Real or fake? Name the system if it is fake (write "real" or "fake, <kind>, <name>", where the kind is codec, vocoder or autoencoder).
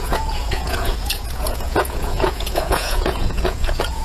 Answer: fake, vocoder, Vocos